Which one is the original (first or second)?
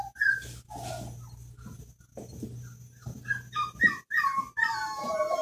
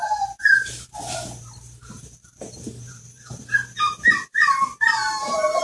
first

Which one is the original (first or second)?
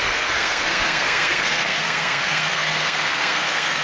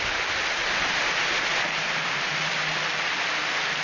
second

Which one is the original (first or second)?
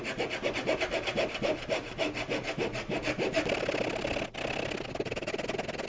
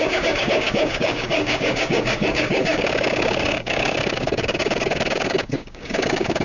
first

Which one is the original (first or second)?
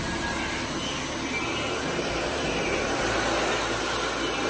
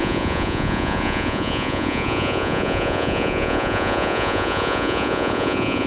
first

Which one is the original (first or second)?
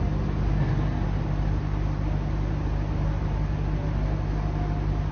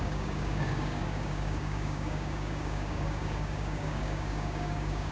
first